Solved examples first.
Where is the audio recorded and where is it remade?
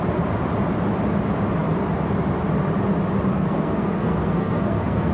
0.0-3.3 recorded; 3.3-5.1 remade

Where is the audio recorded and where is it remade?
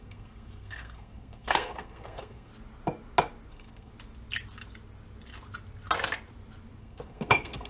0.0-2.5 remade; 2.5-3.5 recorded; 3.5-3.9 remade; 3.9-6.8 recorded; 6.8-7.7 remade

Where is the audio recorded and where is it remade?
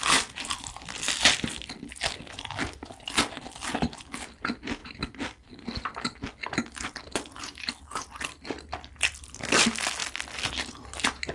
0.0-11.3 recorded